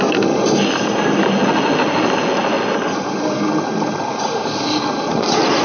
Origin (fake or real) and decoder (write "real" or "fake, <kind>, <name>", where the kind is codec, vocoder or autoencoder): real